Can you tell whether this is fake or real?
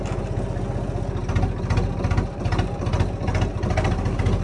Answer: real